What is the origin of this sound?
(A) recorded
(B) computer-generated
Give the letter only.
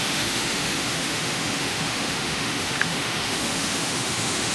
B